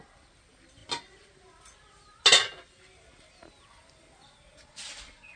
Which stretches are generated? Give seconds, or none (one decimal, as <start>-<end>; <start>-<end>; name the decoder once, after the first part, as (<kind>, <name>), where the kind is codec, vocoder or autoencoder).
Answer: none